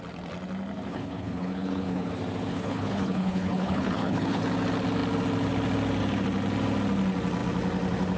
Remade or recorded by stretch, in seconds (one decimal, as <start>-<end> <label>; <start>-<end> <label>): 0.0-0.9 recorded; 0.9-2.1 remade; 2.1-2.5 recorded; 2.5-4.4 remade; 4.4-8.2 recorded